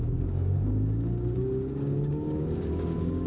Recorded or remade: remade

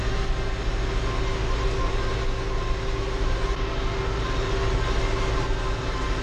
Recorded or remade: recorded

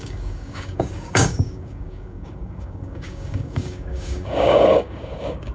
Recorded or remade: remade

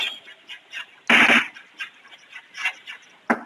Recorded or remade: recorded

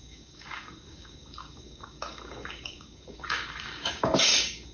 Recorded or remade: remade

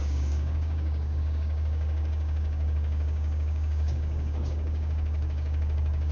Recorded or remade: remade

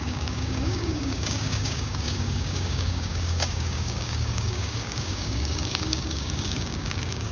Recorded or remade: remade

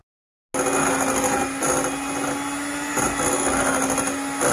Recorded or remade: recorded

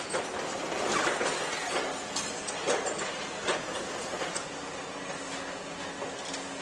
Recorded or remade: recorded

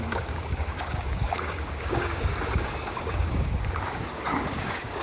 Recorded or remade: remade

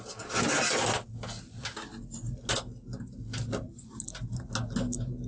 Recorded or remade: recorded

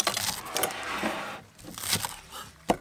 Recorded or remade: recorded